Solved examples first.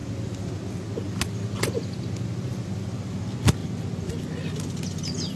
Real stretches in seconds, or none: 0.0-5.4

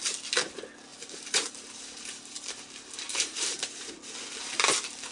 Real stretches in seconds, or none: 0.0-0.9; 3.9-5.1

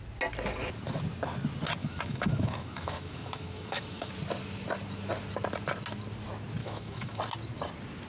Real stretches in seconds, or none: 0.0-1.8; 4.1-6.6; 7.2-8.1

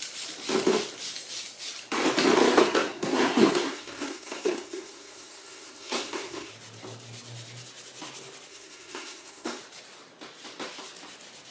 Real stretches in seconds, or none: 0.0-2.4; 6.5-8.5; 9.6-11.5

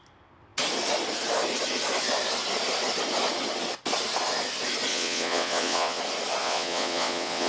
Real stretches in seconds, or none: 0.0-4.9; 6.0-6.4